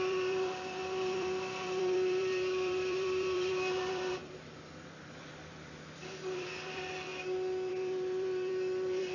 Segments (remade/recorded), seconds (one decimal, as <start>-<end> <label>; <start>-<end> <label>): 0.0-7.1 remade; 7.1-7.7 recorded; 7.7-9.1 remade